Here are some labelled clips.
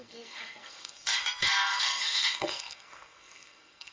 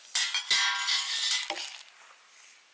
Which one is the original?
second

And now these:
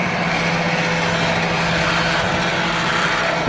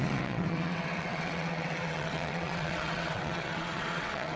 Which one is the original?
first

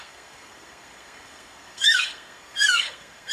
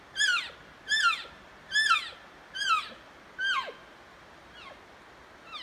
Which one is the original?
second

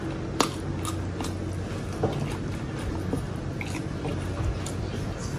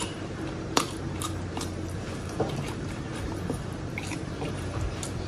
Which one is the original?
first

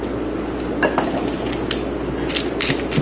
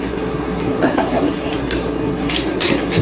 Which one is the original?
first